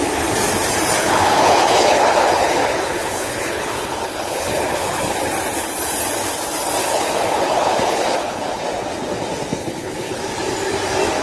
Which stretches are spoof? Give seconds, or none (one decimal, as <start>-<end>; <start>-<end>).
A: 1.0-5.1; 6.8-8.6; 9.6-10.2